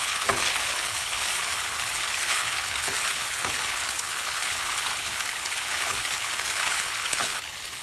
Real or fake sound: fake